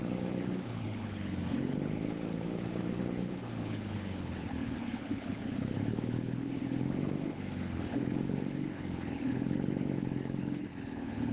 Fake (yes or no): yes